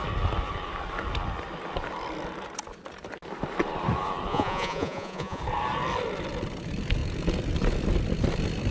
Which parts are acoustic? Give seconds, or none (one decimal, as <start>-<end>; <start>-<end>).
0.0-4.3; 5.4-8.7

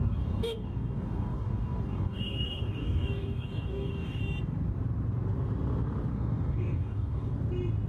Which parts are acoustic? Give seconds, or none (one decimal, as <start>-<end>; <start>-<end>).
4.2-6.1; 7.3-7.9

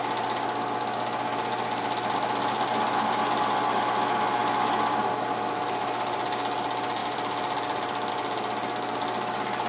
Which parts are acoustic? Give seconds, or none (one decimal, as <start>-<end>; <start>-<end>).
0.0-7.0; 8.1-9.7

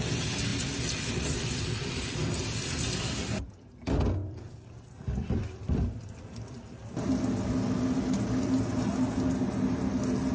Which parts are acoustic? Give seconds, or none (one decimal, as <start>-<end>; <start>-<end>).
0.0-0.5; 3.5-4.2; 4.9-5.6; 7.2-10.3

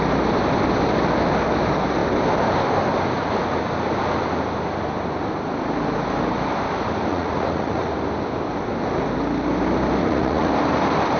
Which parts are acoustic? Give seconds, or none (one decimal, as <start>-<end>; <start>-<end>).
0.0-7.1; 7.9-10.0; 10.5-11.2

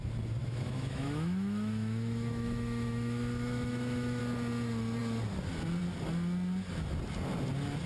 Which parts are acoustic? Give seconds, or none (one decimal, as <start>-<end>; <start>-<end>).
0.0-0.4; 4.2-7.9

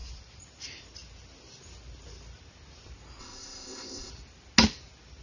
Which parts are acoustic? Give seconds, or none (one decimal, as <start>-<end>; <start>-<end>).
0.0-3.2; 4.1-5.2

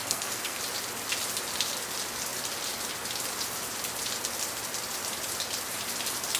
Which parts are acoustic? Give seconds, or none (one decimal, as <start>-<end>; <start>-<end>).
0.6-6.4